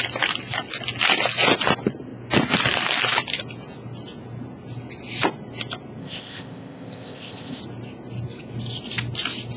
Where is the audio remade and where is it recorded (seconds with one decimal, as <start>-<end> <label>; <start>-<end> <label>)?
0.0-6.0 recorded; 6.0-7.6 remade; 7.6-9.6 recorded